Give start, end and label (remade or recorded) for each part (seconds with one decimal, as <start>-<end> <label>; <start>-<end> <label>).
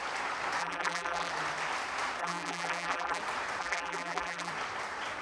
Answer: 0.0-0.6 recorded; 0.6-1.3 remade; 1.3-2.2 recorded; 2.2-3.2 remade; 3.2-3.6 recorded; 3.6-4.5 remade; 4.5-5.2 recorded